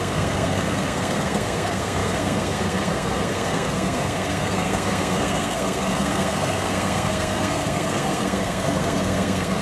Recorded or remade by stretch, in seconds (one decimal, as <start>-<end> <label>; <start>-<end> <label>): 0.0-9.6 remade